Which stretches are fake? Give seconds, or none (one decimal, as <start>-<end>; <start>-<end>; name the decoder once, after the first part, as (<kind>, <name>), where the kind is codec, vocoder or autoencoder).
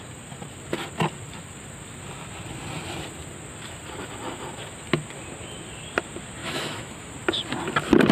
6.4-7.1 (autoencoder, DAC-VAE)